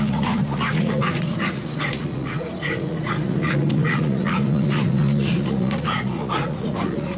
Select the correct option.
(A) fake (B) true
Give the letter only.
A